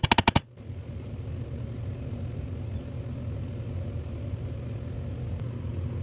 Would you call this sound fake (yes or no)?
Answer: no